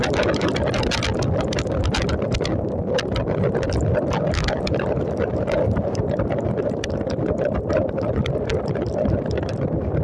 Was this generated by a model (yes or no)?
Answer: yes